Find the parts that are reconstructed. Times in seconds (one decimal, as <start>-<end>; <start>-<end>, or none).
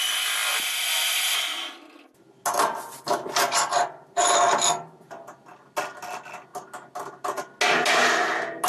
none